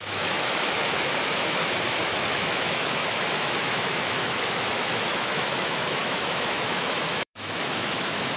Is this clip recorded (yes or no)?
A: no